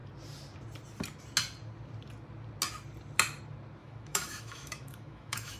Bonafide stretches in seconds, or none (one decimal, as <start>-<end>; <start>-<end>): 0.0-3.8